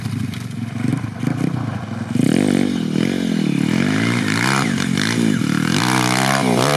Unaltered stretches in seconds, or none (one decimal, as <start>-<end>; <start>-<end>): 0.0-6.8